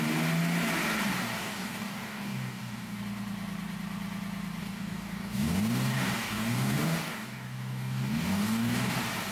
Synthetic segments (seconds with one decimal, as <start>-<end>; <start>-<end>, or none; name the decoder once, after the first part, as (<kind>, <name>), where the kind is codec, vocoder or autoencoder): 1.3-3.0 (codec, DAC); 4.6-8.9